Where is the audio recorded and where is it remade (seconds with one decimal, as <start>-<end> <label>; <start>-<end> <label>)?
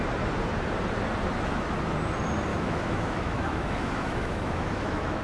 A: 0.0-2.5 recorded; 2.5-5.2 remade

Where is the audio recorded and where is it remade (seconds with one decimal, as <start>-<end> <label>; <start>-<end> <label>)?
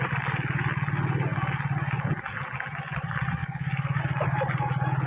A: 0.0-3.4 recorded; 3.4-4.0 remade; 4.0-5.1 recorded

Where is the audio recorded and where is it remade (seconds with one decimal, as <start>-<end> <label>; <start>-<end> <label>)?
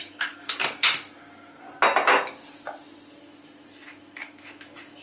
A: 0.0-0.5 remade; 0.5-3.2 recorded; 3.2-5.0 remade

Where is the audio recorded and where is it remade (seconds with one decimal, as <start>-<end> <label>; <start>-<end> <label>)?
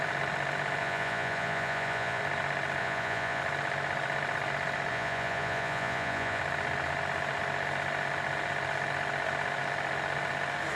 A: 0.0-0.8 recorded; 0.8-2.2 remade; 2.2-2.8 recorded; 2.8-3.4 remade; 3.4-4.9 recorded; 4.9-6.4 remade; 6.4-10.8 recorded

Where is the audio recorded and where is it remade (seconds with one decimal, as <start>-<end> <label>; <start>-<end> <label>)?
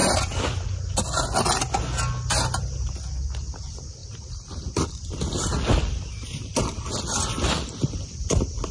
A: 0.0-8.7 recorded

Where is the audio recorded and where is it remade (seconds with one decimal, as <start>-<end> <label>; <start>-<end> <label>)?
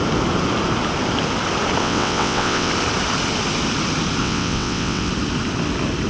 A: 0.0-1.8 recorded; 1.8-2.7 remade; 2.7-4.2 recorded; 4.2-5.1 remade; 5.1-6.1 recorded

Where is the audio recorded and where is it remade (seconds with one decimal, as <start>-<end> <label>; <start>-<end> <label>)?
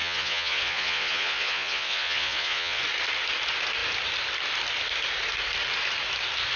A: 0.0-2.8 remade; 2.8-6.6 recorded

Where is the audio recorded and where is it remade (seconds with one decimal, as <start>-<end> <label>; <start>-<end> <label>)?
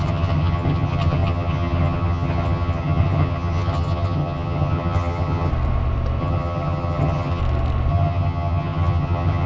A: 0.0-5.5 remade; 5.5-6.2 recorded; 6.2-7.4 remade; 7.4-7.9 recorded; 7.9-9.5 remade